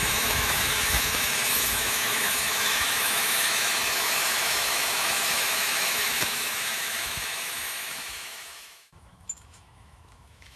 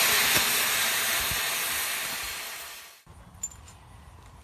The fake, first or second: first